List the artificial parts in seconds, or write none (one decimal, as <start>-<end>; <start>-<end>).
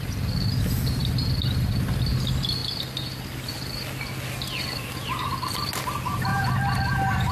1.0-1.9